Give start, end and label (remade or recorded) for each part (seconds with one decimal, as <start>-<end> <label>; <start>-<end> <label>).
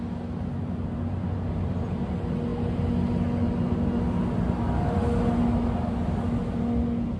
0.0-7.2 recorded